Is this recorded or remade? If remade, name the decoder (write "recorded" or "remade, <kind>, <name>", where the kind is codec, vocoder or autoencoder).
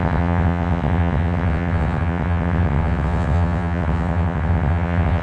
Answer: remade, vocoder, WaveNeXt